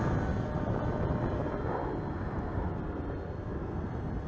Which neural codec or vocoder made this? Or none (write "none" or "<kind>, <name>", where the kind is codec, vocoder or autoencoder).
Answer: none